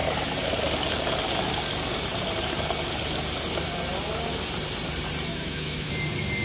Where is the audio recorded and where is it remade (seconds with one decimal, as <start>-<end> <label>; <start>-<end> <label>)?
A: 0.0-5.3 recorded; 5.3-5.9 remade; 5.9-6.4 recorded